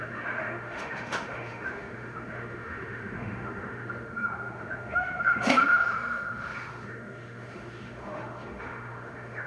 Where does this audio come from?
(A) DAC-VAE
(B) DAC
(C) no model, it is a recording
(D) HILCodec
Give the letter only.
A